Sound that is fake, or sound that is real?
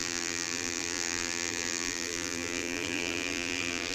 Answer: fake